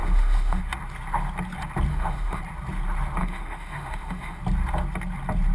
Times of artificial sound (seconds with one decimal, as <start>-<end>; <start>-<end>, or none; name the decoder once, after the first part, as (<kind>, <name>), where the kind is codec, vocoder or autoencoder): 0.0-0.6 (autoencoder, DAC-VAE); 1.9-2.4; 3.2-4.4